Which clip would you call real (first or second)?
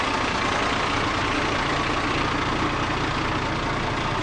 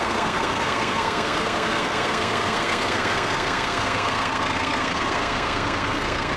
first